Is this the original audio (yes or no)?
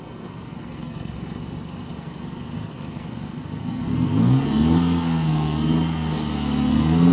no